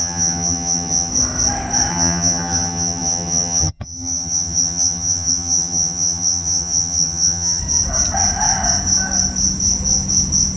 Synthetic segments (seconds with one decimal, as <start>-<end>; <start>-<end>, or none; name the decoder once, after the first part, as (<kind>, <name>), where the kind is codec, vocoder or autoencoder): 0.0-1.1 (vocoder, HiFi-GAN); 1.9-7.6